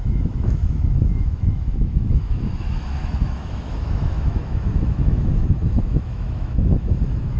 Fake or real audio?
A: fake